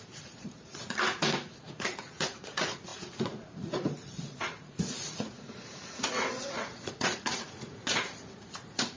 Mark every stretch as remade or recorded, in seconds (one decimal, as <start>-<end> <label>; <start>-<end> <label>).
0.0-9.0 remade